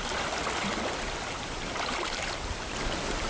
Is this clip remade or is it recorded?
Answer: recorded